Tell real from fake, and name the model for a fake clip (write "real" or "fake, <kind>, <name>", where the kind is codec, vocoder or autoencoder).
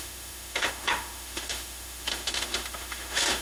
fake, autoencoder, DAC-VAE